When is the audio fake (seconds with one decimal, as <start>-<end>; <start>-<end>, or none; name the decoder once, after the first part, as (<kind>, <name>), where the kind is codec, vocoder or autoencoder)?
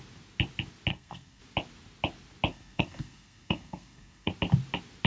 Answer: 0.9-1.4 (codec, SNAC); 2.5-4.3